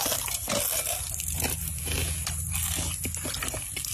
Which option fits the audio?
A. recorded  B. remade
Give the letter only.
A